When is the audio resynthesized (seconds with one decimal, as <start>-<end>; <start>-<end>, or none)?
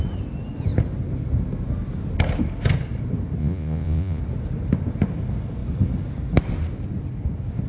3.4-4.2